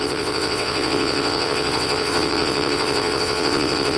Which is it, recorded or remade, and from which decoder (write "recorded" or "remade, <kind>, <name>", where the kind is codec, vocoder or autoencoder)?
remade, vocoder, WaveNeXt